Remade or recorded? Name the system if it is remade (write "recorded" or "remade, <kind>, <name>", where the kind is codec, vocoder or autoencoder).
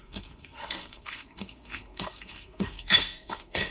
remade, codec, SNAC